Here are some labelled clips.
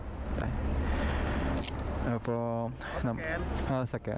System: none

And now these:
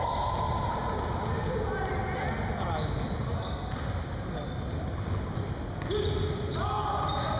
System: none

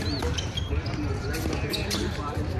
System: vocoder, BigVGAN v2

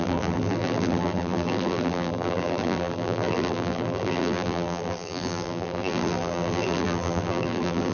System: vocoder, BigVGAN v2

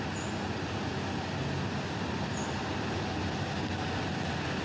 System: none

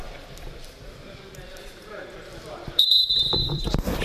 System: vocoder, BigVGAN v2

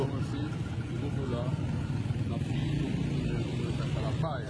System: vocoder, BigVGAN v2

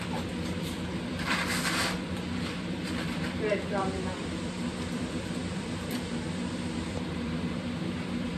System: vocoder, BigVGAN v2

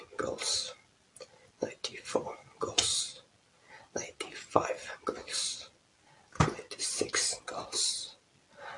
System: none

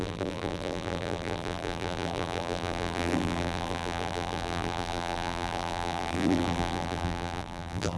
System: vocoder, BigVGAN v2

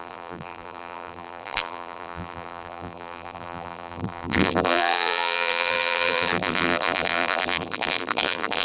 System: vocoder, BigVGAN v2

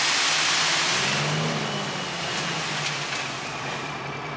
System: none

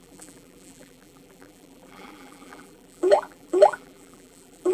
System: vocoder, BigVGAN v2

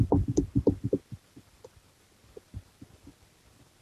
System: vocoder, BigVGAN v2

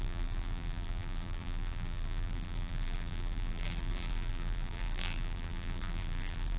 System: vocoder, BigVGAN v2